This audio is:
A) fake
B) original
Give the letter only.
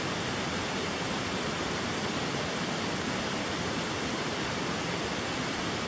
B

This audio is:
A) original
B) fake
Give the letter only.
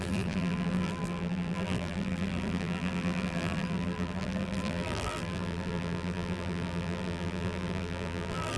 B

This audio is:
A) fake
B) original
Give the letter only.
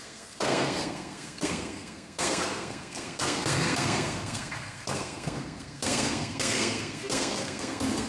A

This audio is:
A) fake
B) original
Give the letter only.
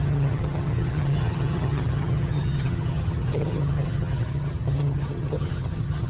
A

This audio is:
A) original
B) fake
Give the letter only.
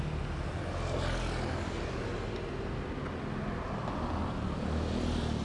A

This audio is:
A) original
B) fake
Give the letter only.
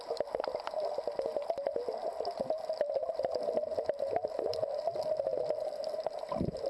A